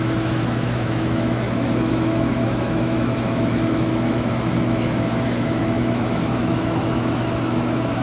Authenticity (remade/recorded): remade